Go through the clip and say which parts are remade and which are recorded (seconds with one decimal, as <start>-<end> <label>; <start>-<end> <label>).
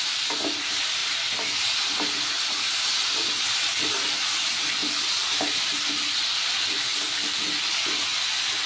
0.0-8.7 recorded